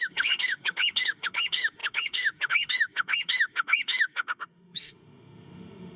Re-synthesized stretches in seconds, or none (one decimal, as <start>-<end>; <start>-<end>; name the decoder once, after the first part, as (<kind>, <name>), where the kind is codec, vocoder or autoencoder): 0.0-6.0 (autoencoder, DAC-VAE)

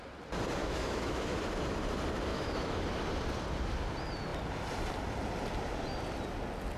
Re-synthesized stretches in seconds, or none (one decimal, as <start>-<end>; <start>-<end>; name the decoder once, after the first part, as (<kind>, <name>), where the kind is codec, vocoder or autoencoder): 0.6-1.4 (autoencoder, DAC-VAE); 2.3-2.8

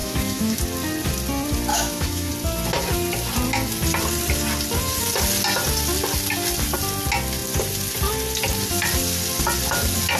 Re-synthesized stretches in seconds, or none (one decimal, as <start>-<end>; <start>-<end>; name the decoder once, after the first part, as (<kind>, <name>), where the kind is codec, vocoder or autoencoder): 0.0-0.6 (autoencoder, DAC-VAE); 1.7-2.3

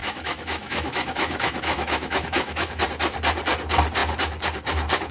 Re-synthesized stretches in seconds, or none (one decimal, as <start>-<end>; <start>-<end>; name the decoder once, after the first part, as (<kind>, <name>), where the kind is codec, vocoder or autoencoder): 0.0-2.8 (autoencoder, DAC-VAE)